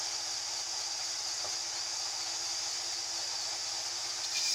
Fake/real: real